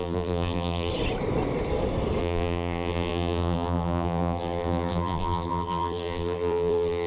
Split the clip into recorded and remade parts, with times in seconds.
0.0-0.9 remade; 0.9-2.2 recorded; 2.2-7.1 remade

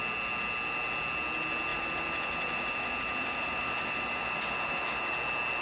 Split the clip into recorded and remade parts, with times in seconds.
0.0-1.7 recorded; 1.7-5.1 remade; 5.1-5.6 recorded